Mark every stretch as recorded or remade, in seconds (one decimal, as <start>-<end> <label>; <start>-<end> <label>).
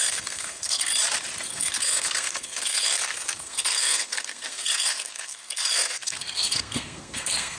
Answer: 0.0-0.9 remade; 0.9-1.5 recorded; 1.5-7.6 remade